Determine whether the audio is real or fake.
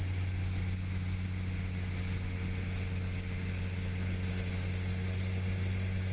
real